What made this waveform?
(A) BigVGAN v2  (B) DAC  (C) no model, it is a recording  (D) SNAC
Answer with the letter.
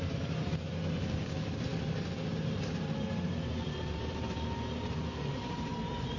A